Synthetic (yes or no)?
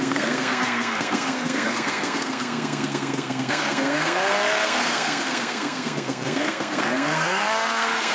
yes